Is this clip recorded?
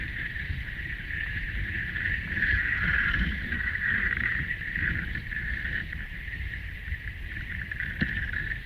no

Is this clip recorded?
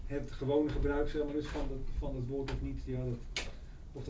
yes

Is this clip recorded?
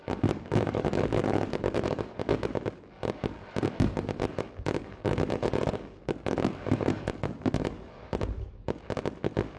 no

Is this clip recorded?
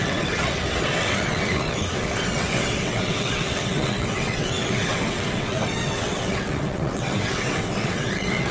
no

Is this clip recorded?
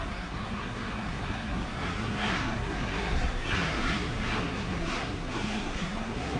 no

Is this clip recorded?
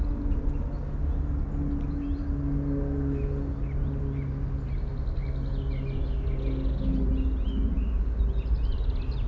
yes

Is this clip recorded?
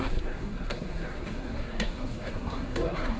no